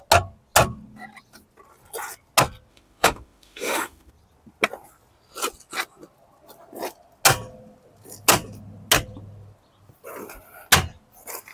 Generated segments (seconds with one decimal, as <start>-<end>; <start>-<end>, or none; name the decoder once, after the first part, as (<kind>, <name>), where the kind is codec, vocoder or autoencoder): 2.7-4.1 (autoencoder, DAC-VAE)